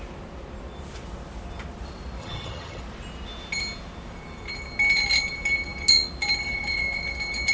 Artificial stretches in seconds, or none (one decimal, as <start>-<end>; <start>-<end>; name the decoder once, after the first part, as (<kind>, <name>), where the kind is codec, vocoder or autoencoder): 2.2-2.8 (vocoder, HiFi-GAN)

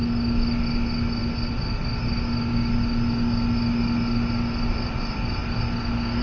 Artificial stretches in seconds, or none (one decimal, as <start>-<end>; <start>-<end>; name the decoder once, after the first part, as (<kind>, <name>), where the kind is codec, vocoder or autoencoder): none